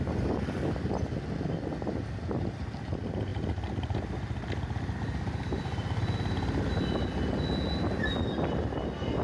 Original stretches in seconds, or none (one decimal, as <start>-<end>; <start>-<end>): 0.0-9.2